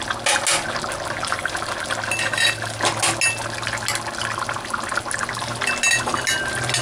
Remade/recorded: recorded